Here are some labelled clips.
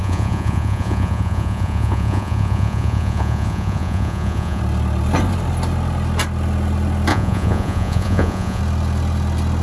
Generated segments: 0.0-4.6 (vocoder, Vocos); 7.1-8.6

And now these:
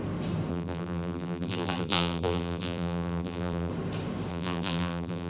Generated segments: 0.5-3.7 (vocoder, BigVGAN v2); 4.3-5.3

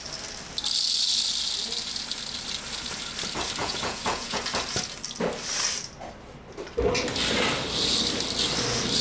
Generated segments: 3.6-4.4 (vocoder, Vocos)

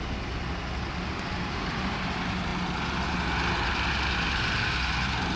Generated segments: none

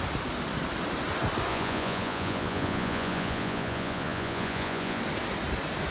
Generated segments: 1.5-5.0 (vocoder, Vocos)

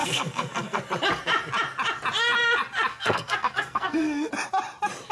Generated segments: 0.0-0.8 (codec, SNAC); 2.9-4.3

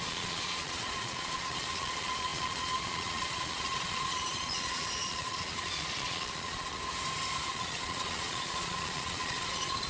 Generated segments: 0.0-6.8 (vocoder, Vocos); 7.5-9.9

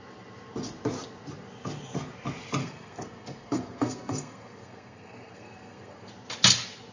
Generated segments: 2.6-6.1 (codec, SNAC)